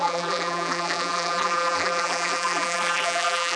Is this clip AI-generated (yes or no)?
yes